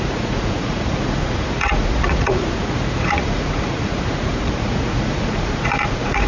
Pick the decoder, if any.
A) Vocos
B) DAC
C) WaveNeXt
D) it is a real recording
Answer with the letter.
A